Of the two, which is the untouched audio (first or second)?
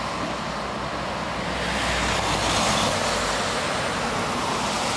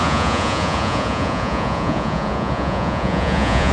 first